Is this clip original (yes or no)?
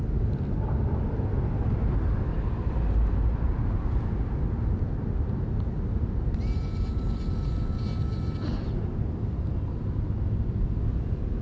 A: yes